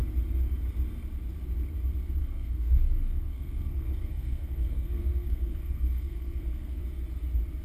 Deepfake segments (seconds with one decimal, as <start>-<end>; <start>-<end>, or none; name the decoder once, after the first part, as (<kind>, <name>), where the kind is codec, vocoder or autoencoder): 2.2-6.8 (codec, SNAC)